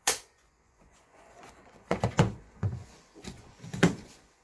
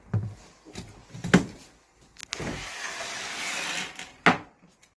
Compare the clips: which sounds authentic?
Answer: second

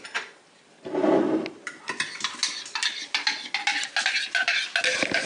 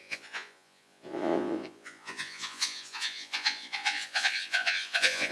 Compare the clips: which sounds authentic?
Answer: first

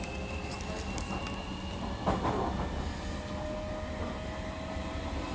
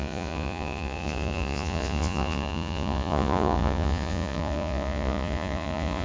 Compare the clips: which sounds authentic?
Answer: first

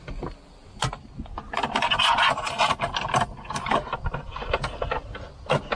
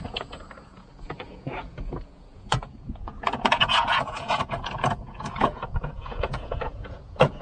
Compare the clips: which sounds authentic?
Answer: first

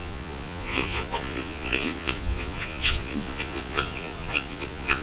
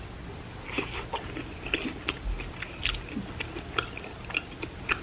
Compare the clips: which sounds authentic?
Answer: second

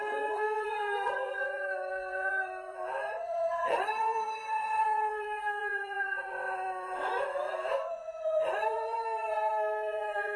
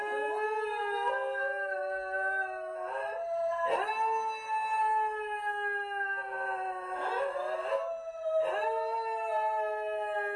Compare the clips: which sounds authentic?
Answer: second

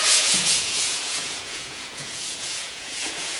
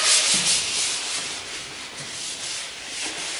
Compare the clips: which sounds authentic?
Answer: second